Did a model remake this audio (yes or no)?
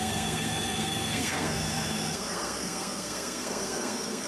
yes